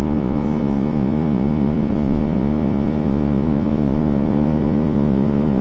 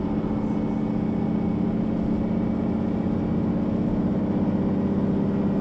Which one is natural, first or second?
second